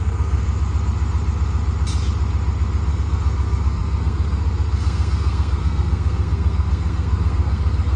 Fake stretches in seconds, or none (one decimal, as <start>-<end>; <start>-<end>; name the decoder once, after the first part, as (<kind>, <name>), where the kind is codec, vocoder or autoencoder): 0.0-0.4 (codec, SNAC); 2.9-8.0